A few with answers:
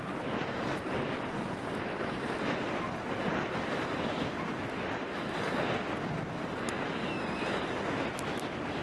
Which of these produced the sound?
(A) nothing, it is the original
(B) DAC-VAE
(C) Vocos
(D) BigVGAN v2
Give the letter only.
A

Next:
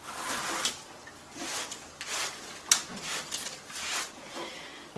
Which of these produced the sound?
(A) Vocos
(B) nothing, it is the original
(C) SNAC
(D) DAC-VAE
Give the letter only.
B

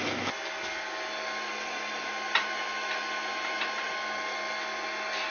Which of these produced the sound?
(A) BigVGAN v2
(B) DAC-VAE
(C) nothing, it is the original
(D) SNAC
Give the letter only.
C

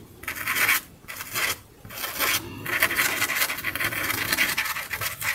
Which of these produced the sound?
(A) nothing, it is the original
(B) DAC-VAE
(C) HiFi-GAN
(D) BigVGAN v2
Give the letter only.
A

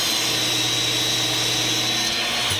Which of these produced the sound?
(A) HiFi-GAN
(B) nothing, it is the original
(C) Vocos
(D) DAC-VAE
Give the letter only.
B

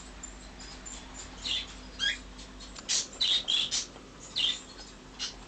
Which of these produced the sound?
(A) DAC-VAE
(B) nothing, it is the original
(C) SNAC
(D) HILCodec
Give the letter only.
B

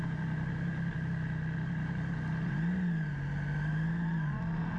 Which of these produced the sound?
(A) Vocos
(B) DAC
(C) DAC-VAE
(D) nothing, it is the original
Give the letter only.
D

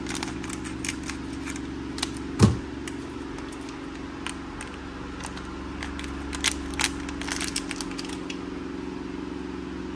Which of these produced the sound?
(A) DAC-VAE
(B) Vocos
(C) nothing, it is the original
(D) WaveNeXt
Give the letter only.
C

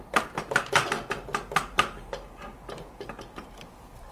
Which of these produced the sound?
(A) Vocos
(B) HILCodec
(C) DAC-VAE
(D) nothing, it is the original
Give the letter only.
D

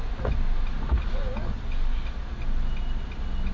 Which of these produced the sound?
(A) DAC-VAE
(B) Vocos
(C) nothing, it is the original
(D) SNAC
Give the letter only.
C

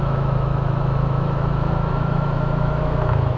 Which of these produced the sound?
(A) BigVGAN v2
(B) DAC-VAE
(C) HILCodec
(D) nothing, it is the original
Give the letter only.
B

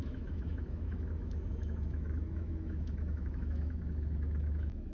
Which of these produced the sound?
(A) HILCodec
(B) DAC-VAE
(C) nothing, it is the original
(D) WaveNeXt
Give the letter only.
B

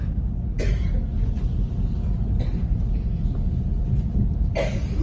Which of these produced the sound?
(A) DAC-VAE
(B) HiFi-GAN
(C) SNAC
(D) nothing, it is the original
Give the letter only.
D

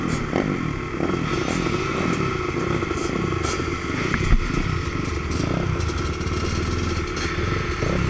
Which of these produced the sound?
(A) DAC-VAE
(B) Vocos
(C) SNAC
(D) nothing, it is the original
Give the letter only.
D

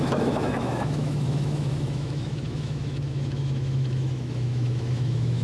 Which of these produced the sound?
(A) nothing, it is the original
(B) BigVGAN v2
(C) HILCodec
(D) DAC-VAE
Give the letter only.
D